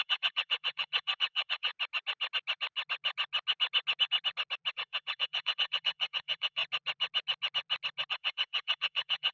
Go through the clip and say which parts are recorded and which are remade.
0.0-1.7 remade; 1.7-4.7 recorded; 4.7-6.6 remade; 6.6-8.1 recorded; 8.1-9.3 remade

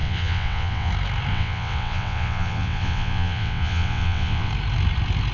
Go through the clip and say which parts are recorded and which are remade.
0.0-0.9 remade; 0.9-1.3 recorded; 1.3-4.5 remade; 4.5-5.3 recorded